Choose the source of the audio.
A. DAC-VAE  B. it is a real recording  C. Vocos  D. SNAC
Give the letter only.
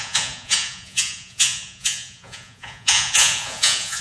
C